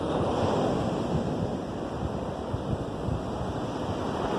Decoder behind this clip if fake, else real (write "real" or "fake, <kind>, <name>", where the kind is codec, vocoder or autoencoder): real